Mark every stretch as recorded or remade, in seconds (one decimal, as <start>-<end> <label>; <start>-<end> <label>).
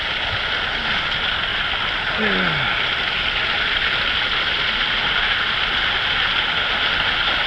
0.0-7.5 recorded